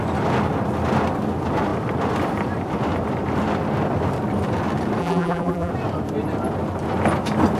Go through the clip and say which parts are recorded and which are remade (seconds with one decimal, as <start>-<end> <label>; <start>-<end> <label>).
0.0-5.0 recorded; 5.0-5.7 remade; 5.7-7.6 recorded